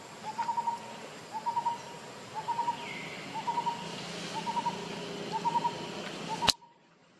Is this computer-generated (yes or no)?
no